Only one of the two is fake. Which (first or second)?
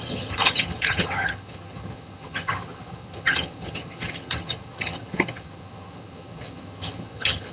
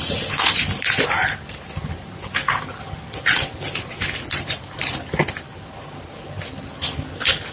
first